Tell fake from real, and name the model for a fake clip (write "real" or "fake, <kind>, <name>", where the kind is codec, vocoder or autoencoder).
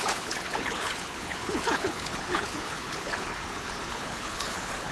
fake, codec, HILCodec